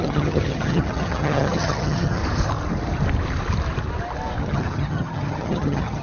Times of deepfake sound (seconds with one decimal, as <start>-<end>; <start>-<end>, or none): 0.0-2.2; 4.4-6.0